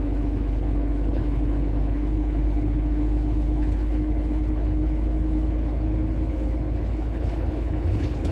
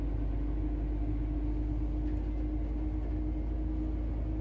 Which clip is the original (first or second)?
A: second